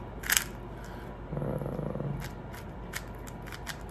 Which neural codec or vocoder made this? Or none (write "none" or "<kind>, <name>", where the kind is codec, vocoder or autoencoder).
none